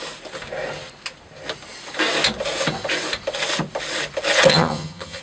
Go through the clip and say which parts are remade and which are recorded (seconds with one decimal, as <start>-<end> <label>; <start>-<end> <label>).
0.0-4.5 recorded; 4.5-5.2 remade